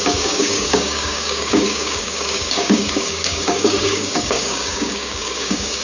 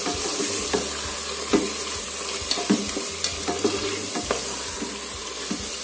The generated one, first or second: first